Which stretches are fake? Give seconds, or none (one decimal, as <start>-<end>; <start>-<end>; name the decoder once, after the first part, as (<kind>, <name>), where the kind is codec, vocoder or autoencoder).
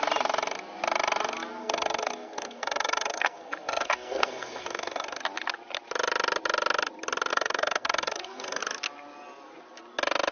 1.6-5.2 (codec, SNAC); 7.3-8.6